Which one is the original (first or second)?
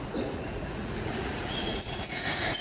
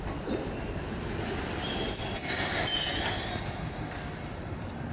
second